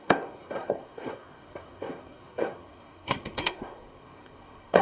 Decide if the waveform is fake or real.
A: fake